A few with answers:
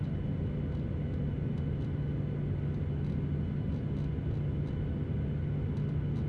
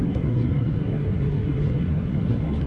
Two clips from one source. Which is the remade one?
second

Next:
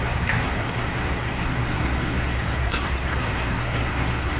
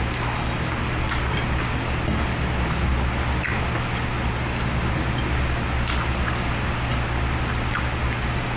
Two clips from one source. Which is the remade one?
first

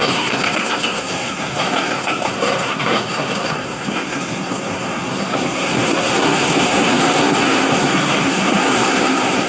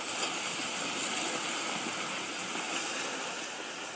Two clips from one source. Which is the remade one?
first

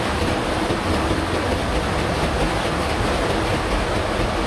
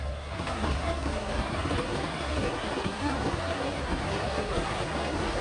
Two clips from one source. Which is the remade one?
second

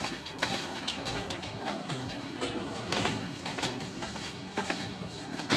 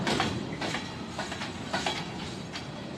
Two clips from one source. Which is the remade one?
first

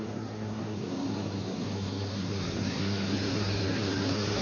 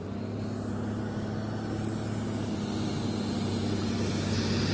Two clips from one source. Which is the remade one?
first